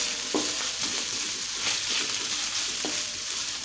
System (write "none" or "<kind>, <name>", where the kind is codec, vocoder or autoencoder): vocoder, BigVGAN v2